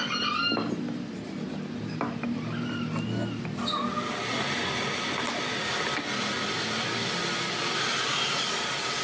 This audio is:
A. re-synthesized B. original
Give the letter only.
B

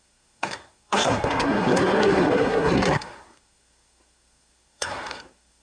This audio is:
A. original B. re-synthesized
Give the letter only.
B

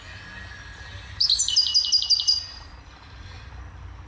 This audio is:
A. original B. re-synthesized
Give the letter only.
A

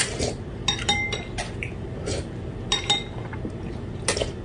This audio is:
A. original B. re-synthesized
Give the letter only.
A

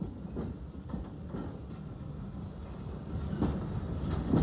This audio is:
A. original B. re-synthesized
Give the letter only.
A